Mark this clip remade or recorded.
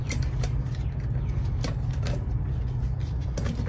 recorded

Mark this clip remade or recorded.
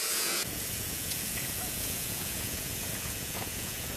remade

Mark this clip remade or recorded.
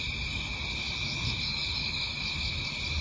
recorded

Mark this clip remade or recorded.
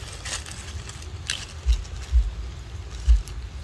recorded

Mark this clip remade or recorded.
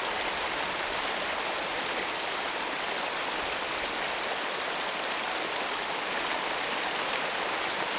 recorded